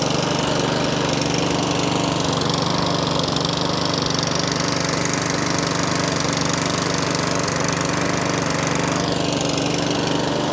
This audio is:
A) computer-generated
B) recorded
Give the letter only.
B